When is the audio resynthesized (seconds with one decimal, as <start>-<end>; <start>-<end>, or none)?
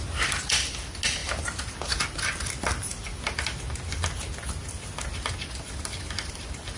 none